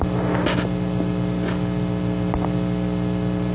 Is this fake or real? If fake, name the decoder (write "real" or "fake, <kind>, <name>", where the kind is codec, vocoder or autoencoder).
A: real